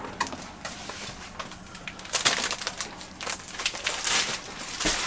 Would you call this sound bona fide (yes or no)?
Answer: yes